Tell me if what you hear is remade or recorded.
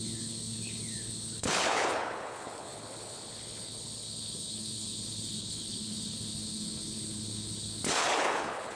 remade